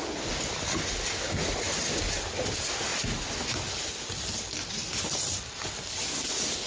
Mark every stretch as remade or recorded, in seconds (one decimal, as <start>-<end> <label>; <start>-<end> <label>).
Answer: 0.0-6.7 recorded